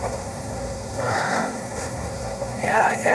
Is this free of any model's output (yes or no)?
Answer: no